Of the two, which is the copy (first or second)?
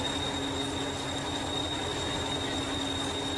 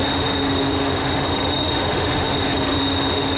second